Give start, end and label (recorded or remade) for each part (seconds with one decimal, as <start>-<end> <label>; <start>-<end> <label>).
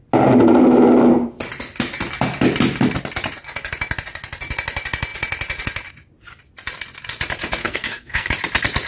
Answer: 0.0-7.6 recorded; 7.6-8.3 remade; 8.3-8.9 recorded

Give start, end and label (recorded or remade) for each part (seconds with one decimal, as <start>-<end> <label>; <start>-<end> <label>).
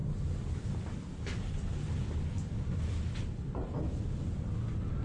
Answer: 0.0-5.0 recorded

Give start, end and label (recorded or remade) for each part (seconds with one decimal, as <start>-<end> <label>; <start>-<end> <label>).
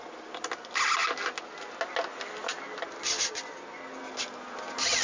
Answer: 0.0-5.0 recorded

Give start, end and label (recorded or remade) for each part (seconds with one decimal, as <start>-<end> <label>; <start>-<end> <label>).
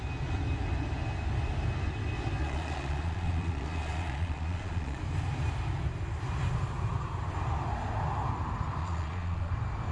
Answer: 0.0-2.4 recorded; 2.4-5.0 remade; 5.0-8.8 recorded; 8.8-9.5 remade; 9.5-9.9 recorded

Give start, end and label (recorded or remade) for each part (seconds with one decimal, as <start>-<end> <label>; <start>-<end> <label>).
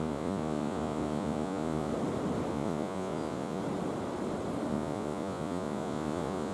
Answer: 0.0-1.9 remade; 1.9-2.5 recorded; 2.5-3.6 remade; 3.6-4.7 recorded; 4.7-6.5 remade